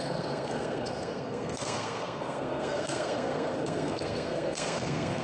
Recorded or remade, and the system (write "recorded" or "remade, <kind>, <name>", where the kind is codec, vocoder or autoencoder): remade, codec, SNAC